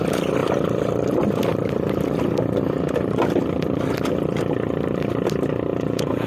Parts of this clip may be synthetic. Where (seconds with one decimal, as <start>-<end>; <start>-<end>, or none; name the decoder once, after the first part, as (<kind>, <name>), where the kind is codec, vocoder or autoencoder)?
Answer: 5.7-6.3 (vocoder, Vocos)